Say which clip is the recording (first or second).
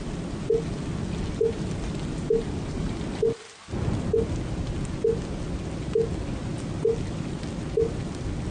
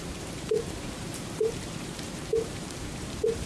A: first